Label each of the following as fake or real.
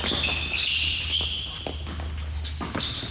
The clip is real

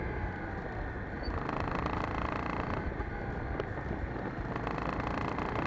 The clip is real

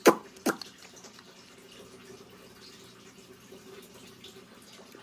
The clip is real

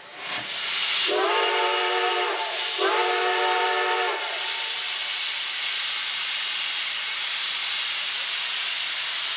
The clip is fake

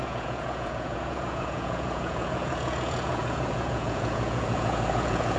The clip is fake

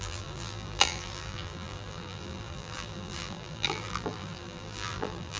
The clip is fake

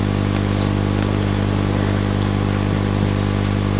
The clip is real